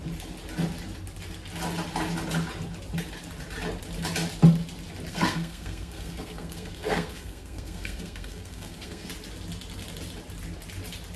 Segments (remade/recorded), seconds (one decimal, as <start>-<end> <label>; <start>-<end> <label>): 0.0-5.1 recorded; 5.1-9.1 remade; 9.1-11.2 recorded